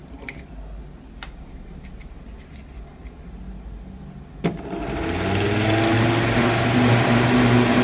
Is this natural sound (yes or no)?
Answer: yes